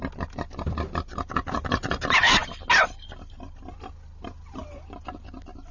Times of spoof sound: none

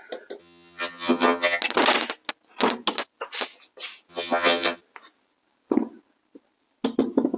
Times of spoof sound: 0.4-1.6; 4.1-4.8

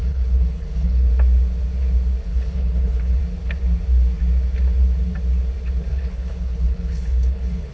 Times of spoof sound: 0.0-1.1; 2.3-3.2; 5.9-7.7

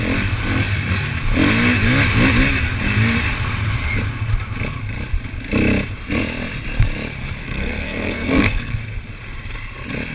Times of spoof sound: 7.4-8.8

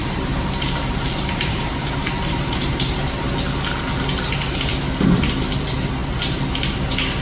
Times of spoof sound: 0.0-3.3

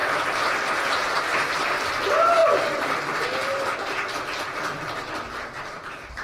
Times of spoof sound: 1.6-2.4; 5.2-6.2

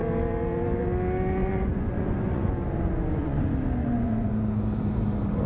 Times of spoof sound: 1.4-3.4; 3.8-4.3

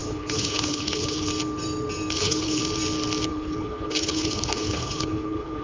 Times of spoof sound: 0.0-1.3; 2.2-2.6; 3.3-5.6